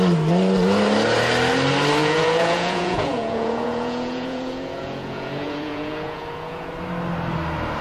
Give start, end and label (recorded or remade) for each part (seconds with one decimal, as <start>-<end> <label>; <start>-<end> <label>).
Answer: 0.0-2.0 recorded; 2.0-6.7 remade; 6.7-7.8 recorded